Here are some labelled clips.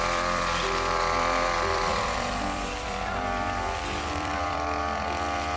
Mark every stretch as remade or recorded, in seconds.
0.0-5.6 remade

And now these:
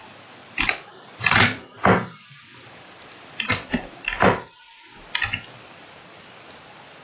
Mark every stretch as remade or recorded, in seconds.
0.0-0.4 recorded; 0.4-4.6 remade; 4.6-7.0 recorded

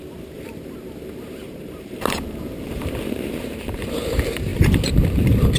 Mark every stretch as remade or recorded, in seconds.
0.0-4.5 remade; 4.5-5.6 recorded